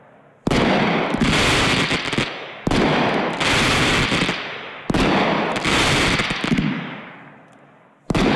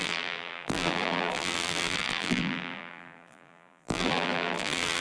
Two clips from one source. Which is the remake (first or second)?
second